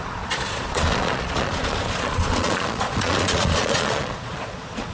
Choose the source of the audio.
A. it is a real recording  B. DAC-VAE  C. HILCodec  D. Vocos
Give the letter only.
D